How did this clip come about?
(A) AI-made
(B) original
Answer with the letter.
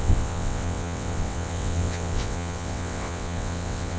A